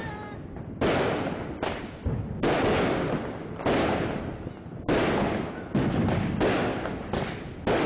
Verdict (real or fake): real